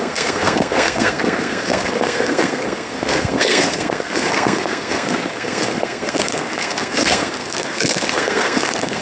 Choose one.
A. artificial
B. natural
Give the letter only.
A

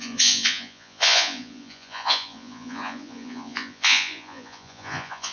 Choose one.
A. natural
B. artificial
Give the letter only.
B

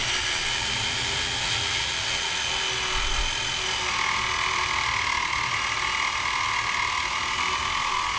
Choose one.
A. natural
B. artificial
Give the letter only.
A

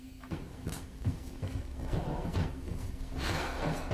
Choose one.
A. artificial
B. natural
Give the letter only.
A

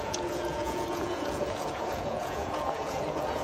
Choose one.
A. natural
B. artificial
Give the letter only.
B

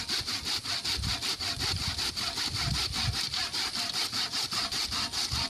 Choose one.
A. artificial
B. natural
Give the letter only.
B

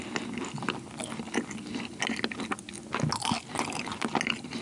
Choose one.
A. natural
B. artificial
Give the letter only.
A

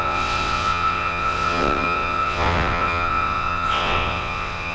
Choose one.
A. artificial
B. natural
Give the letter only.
A